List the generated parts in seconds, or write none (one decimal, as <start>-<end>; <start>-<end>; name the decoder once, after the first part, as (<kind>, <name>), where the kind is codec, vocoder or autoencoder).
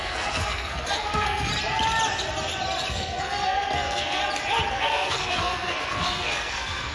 0.0-1.5 (codec, SNAC); 2.9-4.2; 4.7-6.9